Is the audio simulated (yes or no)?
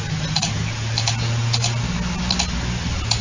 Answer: no